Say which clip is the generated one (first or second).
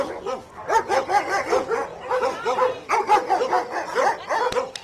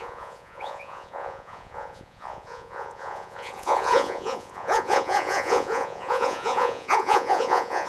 second